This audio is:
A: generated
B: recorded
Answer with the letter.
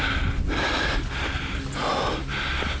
B